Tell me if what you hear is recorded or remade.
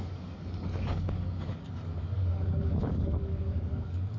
remade